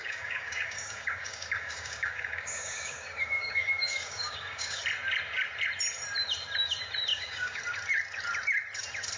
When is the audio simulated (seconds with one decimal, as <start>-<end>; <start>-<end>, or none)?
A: 0.0-4.8; 7.1-7.6